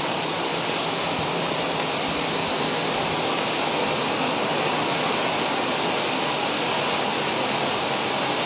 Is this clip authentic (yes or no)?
yes